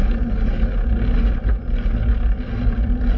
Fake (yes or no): no